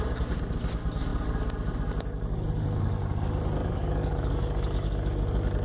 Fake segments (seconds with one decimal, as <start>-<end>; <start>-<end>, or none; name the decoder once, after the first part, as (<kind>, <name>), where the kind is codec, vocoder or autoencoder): 3.6-4.9 (codec, DAC)